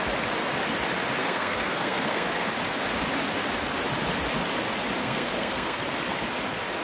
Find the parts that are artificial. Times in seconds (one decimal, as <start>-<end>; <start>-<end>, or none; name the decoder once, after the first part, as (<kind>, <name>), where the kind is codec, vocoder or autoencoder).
1.2-2.5 (codec, SNAC); 5.0-5.8